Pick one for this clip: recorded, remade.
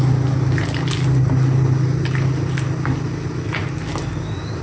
recorded